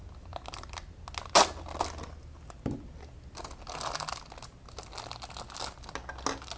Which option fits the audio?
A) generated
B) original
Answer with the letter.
B